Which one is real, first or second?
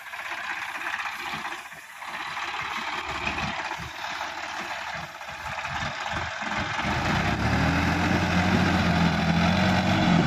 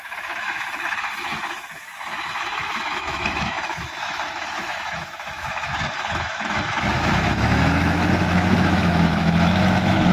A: first